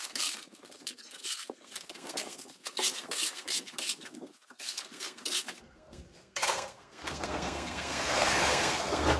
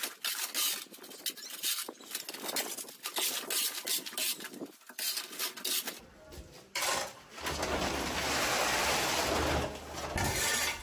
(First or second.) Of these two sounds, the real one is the second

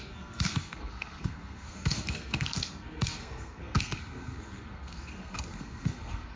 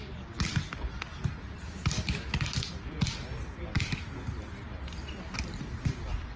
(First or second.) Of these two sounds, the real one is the second